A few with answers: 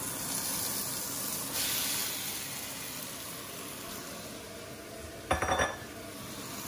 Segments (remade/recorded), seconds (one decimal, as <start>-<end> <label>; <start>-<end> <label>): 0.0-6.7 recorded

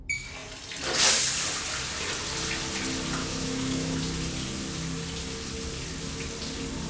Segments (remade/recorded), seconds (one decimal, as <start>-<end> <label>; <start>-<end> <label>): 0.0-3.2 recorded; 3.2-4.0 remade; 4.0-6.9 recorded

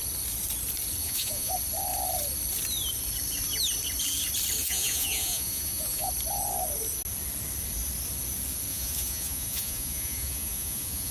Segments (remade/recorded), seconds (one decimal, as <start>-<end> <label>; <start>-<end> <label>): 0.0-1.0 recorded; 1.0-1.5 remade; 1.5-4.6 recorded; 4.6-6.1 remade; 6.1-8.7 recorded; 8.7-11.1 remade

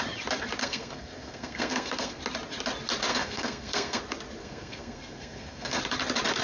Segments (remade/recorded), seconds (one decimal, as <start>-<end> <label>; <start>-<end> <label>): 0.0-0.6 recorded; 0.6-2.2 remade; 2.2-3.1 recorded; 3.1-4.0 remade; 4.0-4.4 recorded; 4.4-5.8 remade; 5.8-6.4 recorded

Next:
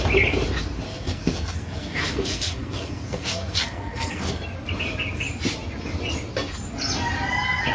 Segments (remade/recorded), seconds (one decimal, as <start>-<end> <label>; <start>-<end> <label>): 0.0-0.9 recorded; 0.9-4.3 remade; 4.3-7.7 recorded